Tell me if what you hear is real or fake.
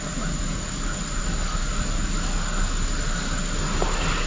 real